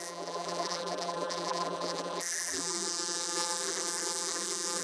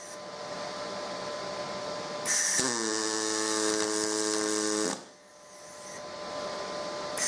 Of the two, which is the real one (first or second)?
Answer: second